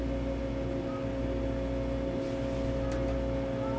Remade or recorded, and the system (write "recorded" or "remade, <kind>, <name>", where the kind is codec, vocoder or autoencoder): recorded